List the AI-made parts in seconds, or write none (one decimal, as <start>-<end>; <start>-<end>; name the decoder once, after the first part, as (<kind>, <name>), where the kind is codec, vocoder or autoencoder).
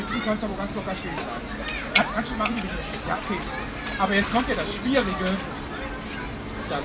none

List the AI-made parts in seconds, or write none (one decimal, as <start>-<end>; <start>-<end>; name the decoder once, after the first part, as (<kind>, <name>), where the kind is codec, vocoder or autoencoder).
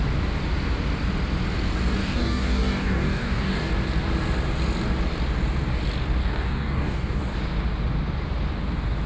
2.0-3.7 (codec, DAC); 6.2-7.2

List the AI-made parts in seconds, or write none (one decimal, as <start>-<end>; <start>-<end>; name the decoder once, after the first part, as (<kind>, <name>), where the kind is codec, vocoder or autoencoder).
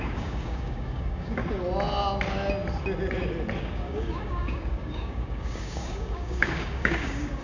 0.0-1.4 (codec, DAC); 3.6-7.4